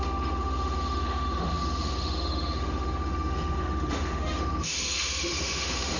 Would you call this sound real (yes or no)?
no